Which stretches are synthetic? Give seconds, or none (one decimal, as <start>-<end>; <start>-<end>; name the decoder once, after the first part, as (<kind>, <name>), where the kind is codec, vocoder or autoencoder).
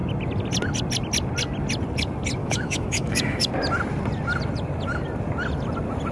2.4-3.5 (autoencoder, DAC-VAE)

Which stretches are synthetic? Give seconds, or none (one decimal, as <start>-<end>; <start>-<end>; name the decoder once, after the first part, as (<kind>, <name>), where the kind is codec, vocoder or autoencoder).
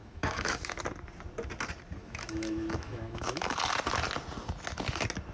0.0-0.8 (autoencoder, DAC-VAE); 2.0-3.6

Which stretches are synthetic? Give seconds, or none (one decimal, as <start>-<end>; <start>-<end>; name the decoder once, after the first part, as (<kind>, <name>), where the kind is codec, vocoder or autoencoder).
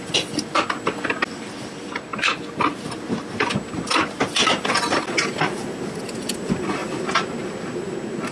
none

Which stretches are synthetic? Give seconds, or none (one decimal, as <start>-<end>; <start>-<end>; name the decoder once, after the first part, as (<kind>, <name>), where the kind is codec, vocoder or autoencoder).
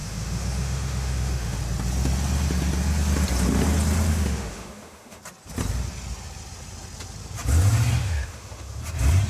0.0-1.6 (autoencoder, DAC-VAE); 4.1-5.2; 8.0-8.8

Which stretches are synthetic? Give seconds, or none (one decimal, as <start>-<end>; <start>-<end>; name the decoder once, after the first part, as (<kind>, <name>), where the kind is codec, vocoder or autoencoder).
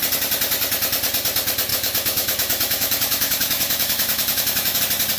1.7-4.8 (autoencoder, DAC-VAE)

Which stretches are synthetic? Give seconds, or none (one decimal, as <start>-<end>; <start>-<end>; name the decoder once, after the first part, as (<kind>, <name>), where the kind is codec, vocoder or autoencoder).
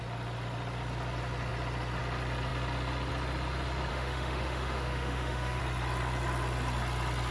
3.9-5.6 (autoencoder, DAC-VAE)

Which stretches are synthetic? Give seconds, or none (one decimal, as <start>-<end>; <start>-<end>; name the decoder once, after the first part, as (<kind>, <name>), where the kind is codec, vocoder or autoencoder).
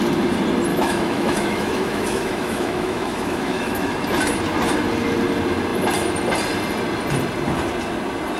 0.7-3.9 (autoencoder, DAC-VAE)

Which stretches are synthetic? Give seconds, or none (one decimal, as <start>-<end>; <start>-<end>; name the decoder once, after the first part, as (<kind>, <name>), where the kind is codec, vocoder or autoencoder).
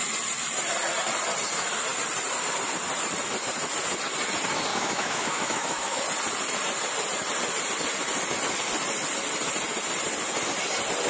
4.7-6.0 (autoencoder, DAC-VAE)